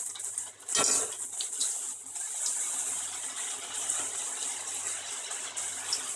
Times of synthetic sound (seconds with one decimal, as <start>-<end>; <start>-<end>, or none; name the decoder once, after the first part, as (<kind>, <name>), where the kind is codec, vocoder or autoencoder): none